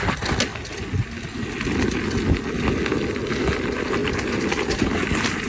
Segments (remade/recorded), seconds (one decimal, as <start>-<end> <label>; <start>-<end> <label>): 0.0-5.5 recorded